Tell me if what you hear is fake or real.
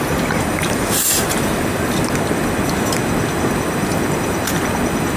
real